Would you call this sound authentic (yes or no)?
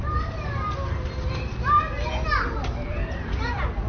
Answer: yes